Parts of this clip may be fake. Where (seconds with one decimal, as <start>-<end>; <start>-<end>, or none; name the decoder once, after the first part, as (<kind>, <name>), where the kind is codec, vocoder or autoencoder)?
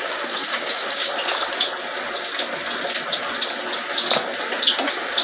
0.0-1.1 (codec, DAC)